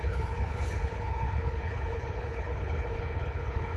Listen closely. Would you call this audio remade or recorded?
remade